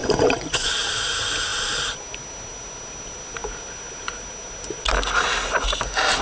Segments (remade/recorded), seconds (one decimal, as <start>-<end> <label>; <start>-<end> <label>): 0.0-0.7 remade; 0.7-6.2 recorded